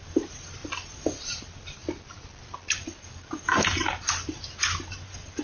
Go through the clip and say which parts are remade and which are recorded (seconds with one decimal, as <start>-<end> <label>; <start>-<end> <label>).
0.0-0.6 remade; 0.6-1.2 recorded; 1.2-1.8 remade; 1.8-3.0 recorded; 3.0-5.4 remade